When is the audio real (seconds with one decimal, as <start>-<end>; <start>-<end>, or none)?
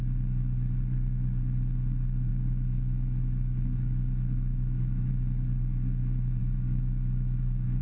0.0-2.3; 5.1-6.4